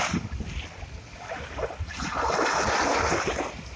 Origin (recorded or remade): recorded